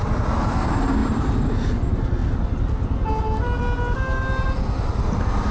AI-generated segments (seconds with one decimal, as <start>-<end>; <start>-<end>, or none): none